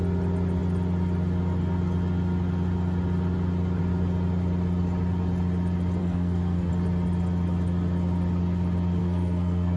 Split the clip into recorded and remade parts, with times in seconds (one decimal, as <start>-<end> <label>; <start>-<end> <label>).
0.0-6.0 recorded; 6.0-6.7 remade; 6.7-9.0 recorded; 9.0-9.8 remade